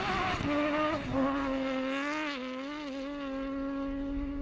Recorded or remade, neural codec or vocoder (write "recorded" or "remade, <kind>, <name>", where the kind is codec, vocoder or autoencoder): recorded